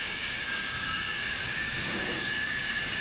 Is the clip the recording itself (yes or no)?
no